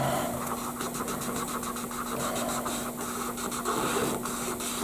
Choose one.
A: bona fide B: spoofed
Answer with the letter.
A